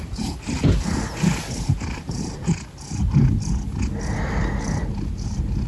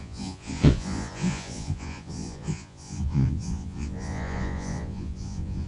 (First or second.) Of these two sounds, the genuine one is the first